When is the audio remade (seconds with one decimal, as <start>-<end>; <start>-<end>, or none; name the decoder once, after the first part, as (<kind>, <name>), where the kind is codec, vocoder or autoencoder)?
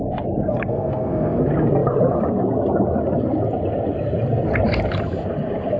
0.7-1.4 (codec, SNAC)